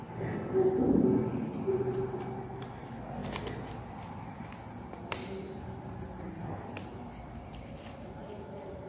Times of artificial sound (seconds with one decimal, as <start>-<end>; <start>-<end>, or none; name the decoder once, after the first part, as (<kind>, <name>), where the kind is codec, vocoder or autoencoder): none